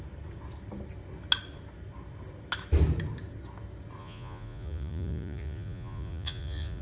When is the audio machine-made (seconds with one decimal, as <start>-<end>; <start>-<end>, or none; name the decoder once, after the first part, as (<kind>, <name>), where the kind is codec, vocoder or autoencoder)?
4.0-6.8 (vocoder, Vocos)